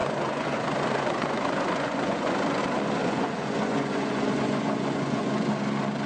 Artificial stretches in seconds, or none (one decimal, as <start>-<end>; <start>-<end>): 0.0-2.6; 3.0-5.5